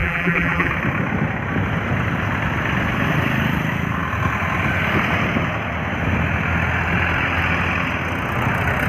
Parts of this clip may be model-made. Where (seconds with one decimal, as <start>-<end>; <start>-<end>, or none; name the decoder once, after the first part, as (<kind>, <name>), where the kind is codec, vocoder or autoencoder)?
0.0-0.7 (vocoder, BigVGAN v2)